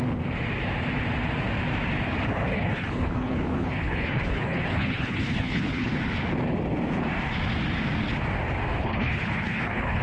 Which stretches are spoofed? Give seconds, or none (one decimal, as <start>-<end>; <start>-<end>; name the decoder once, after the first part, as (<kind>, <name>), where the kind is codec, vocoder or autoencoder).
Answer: 2.5-6.0 (codec, HILCodec); 8.8-10.0